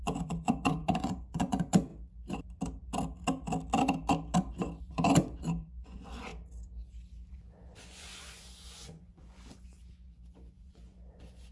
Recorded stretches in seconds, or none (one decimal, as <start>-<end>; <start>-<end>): 1.9-4.8; 6.3-7.3

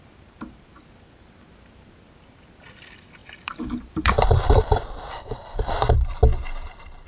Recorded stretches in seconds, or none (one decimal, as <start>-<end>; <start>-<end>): 0.0-3.2; 6.1-7.1

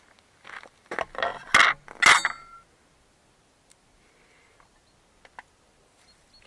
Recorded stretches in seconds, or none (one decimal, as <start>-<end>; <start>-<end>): 0.0-6.5

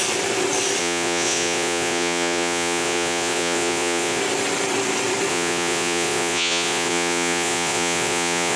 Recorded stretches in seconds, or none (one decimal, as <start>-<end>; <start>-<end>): 0.0-0.8; 4.2-5.3

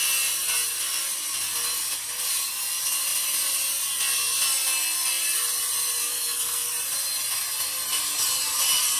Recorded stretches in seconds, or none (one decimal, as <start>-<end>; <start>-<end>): 0.0-6.0; 6.7-9.0

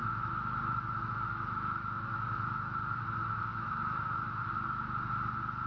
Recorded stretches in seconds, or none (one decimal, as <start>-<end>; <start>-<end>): 3.0-3.5; 4.5-5.7